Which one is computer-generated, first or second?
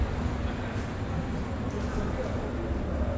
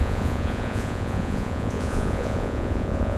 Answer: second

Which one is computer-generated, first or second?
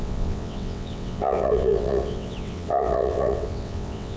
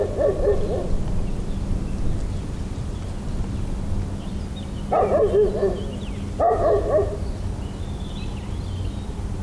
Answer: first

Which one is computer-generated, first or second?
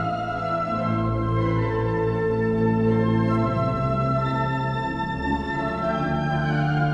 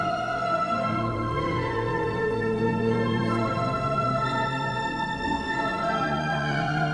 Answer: second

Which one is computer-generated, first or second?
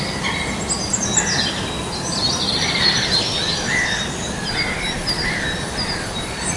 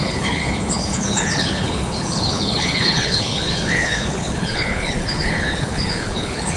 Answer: second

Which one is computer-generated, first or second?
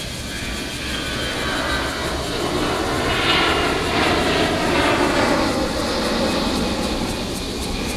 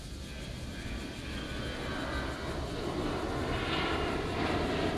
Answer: second